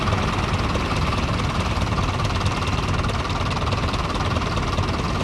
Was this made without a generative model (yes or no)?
yes